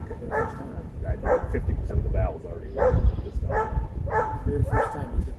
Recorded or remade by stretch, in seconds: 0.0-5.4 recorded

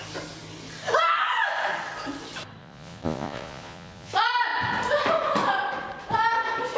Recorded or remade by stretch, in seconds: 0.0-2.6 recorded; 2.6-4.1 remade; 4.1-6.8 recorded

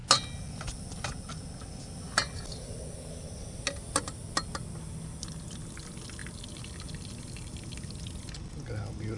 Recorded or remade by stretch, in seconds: 0.0-9.2 recorded

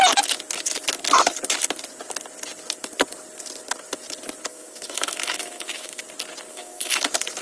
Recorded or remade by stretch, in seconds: 0.0-4.5 recorded; 4.5-6.0 remade; 6.0-6.5 recorded; 6.5-7.0 remade; 7.0-7.4 recorded

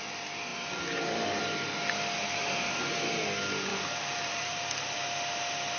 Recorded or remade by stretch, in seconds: 0.0-3.7 recorded; 3.7-4.7 remade; 4.7-5.8 recorded